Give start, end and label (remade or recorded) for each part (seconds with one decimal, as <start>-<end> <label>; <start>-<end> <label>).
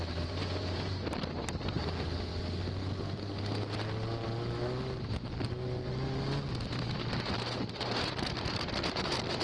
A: 0.0-2.3 remade; 2.3-7.1 recorded; 7.1-9.4 remade